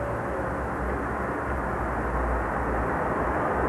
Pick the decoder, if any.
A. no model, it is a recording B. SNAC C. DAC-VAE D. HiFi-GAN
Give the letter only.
A